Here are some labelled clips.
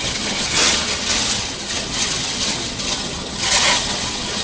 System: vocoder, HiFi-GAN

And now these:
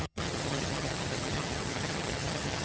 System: vocoder, HiFi-GAN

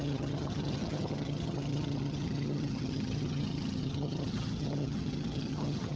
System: vocoder, HiFi-GAN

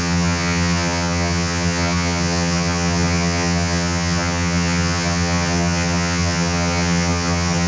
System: vocoder, HiFi-GAN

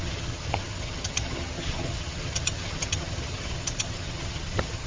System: vocoder, HiFi-GAN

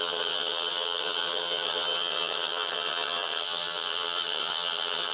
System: vocoder, HiFi-GAN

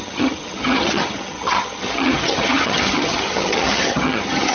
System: vocoder, HiFi-GAN